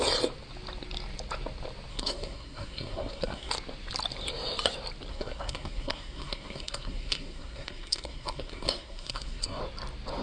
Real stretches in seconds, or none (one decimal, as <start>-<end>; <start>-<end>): 0.0-1.9; 3.5-5.1; 9.6-10.2